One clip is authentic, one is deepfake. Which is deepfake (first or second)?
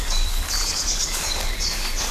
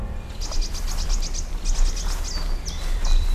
first